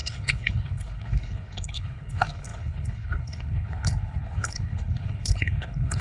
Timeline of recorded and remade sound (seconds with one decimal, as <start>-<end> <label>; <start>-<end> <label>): 0.0-6.0 remade